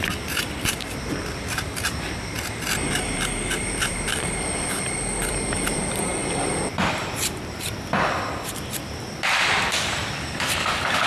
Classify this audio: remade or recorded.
remade